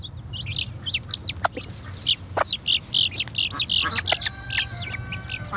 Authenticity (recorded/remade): recorded